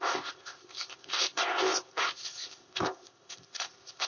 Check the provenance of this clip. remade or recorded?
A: remade